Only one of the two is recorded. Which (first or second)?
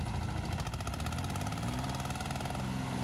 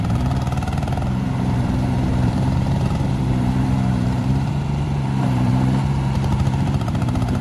first